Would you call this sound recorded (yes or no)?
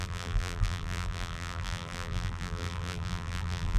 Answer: no